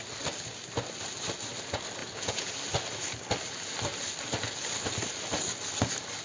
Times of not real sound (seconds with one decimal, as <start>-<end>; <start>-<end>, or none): 2.0-2.5